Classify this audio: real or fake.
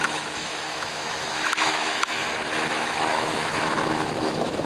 fake